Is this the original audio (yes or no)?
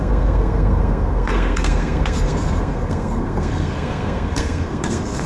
no